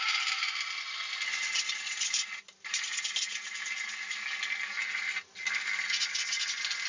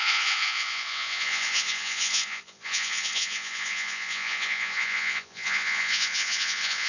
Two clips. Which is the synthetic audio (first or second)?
second